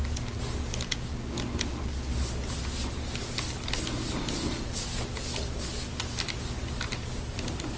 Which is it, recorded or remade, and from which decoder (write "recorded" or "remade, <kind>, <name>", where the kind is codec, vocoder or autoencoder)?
recorded